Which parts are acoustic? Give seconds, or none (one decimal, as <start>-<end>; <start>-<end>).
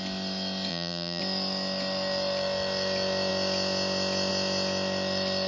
0.0-0.7; 1.2-5.5